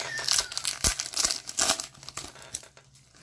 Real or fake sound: real